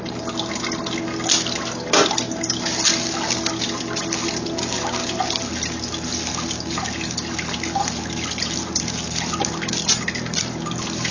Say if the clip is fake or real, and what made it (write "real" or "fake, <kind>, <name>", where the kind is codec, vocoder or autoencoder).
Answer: real